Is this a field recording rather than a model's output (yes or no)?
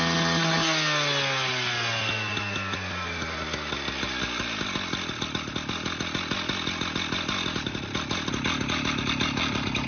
yes